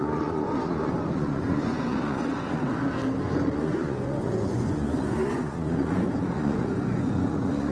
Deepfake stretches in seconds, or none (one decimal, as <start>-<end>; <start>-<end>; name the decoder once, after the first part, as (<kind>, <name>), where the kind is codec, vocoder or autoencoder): 0.0-2.6 (vocoder, Vocos); 3.2-7.7